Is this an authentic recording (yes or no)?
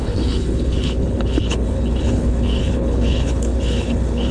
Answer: no